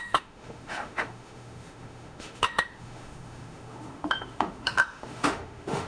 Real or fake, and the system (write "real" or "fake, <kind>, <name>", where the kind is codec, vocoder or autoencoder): fake, autoencoder, DAC-VAE